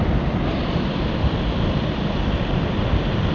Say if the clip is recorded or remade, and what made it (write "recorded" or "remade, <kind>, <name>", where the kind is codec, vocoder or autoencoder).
recorded